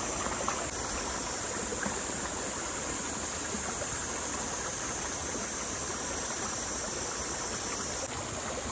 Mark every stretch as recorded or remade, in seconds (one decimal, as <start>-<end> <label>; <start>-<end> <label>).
0.0-8.7 recorded